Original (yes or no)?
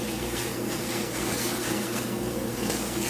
no